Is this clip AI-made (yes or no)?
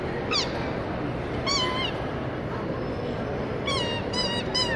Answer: yes